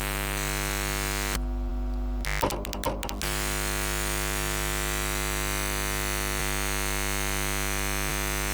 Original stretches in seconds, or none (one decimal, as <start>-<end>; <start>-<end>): 0.0-8.5